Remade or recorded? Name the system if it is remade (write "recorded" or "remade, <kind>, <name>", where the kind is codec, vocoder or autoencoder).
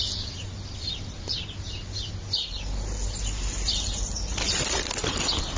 recorded